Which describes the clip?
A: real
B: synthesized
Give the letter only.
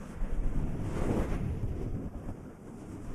A